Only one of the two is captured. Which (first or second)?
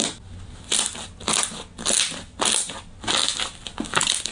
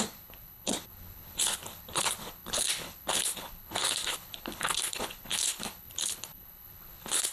first